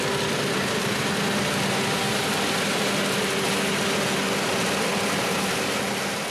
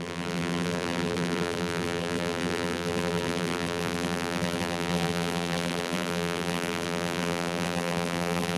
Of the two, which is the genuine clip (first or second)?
first